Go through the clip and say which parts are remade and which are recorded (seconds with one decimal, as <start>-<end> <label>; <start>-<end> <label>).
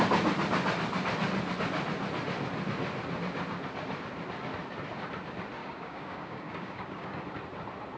0.0-5.6 recorded; 5.6-7.2 remade; 7.2-8.0 recorded